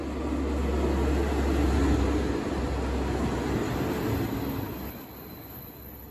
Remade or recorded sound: recorded